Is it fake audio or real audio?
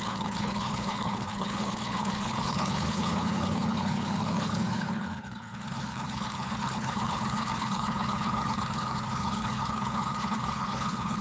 fake